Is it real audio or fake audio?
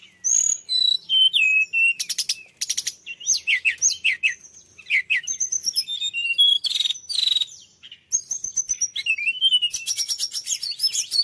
real